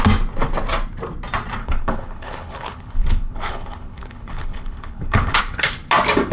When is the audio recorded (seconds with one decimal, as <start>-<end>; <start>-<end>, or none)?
0.0-1.6; 5.4-6.3